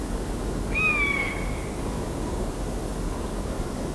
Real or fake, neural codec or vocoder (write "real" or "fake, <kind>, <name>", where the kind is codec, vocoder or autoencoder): fake, codec, DAC